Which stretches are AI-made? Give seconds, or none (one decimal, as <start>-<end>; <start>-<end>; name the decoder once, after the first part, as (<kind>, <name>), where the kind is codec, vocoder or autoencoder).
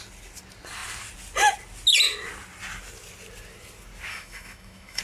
4.1-5.0 (autoencoder, DAC-VAE)